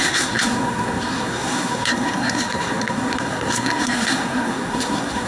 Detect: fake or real fake